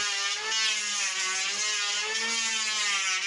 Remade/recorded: recorded